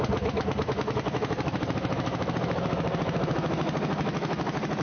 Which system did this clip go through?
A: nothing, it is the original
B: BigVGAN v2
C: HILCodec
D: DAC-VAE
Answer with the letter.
D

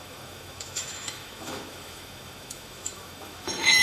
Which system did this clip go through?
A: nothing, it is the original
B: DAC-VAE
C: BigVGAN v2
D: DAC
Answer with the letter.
B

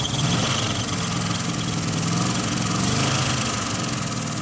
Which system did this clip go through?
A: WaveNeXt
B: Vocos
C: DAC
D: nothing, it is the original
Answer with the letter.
D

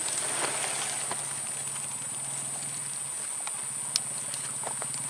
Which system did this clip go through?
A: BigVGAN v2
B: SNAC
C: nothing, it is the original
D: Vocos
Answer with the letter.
C